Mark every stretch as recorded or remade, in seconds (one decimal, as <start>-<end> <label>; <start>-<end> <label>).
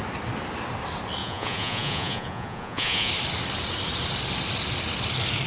0.0-1.2 recorded; 1.2-3.1 remade; 3.1-5.5 recorded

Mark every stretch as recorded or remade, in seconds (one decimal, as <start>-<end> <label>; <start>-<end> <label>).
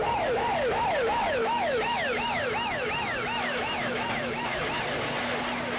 0.0-1.4 recorded; 1.4-4.6 remade; 4.6-5.8 recorded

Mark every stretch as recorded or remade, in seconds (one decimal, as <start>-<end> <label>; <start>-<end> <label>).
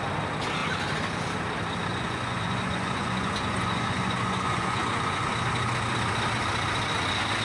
0.0-1.9 recorded; 1.9-5.3 remade; 5.3-7.4 recorded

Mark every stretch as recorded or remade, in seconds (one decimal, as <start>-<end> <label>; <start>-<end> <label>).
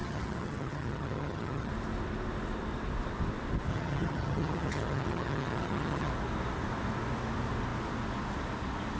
0.0-1.7 remade; 1.7-3.7 recorded; 3.7-6.1 remade; 6.1-9.0 recorded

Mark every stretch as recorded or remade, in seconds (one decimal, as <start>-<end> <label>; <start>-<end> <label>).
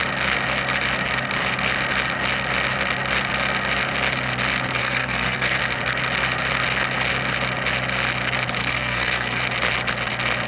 0.0-4.8 recorded; 4.8-5.6 remade; 5.6-8.6 recorded; 8.6-9.4 remade; 9.4-10.5 recorded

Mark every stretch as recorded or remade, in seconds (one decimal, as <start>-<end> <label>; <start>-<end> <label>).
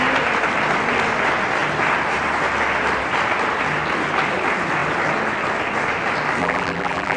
0.0-6.4 recorded; 6.4-7.2 remade